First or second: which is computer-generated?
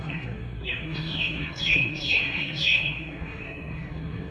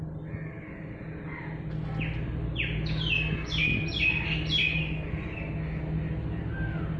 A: first